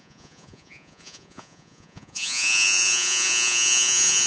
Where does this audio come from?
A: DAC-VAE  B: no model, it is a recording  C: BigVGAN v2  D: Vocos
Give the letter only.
D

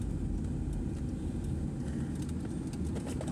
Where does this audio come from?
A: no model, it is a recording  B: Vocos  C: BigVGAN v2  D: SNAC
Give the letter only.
A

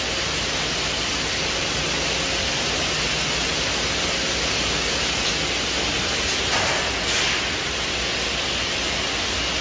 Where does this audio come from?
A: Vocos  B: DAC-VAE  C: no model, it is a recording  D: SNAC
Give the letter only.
C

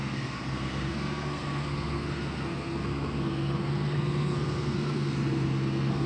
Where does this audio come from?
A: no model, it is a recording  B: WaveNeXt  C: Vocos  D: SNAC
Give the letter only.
D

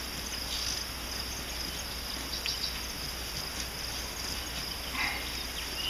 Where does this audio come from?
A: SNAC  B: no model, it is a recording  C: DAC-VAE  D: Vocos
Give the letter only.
B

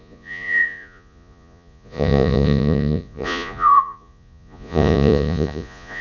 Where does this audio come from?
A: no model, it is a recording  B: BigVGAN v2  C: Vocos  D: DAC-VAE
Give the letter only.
C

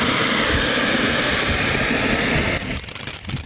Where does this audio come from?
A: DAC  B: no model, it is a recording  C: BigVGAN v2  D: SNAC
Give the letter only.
C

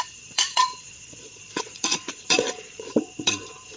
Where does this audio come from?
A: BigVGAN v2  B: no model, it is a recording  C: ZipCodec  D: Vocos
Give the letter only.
D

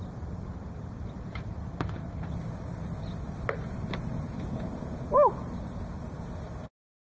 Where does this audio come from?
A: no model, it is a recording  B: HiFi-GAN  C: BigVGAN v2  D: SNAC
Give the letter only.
C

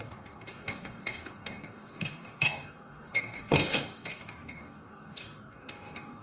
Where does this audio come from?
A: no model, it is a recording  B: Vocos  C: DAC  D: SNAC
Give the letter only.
C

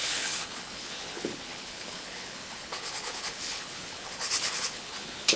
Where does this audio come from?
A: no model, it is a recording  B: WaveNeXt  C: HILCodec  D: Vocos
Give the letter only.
C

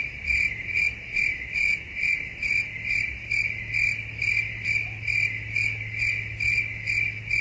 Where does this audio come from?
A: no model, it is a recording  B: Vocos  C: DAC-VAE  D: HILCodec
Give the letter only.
A